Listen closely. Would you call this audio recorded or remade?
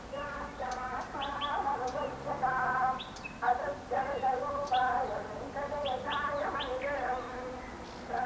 recorded